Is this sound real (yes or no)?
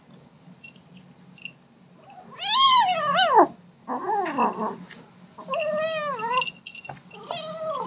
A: yes